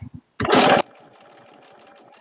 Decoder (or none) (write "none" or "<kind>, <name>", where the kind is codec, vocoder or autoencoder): none